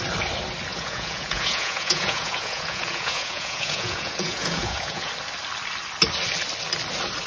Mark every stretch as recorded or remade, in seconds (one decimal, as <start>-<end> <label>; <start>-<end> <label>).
0.0-0.7 recorded; 0.7-5.1 remade; 5.1-7.3 recorded